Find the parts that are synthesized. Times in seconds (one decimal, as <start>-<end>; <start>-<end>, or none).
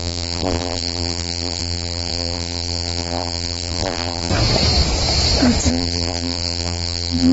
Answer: 0.0-4.3; 5.7-7.3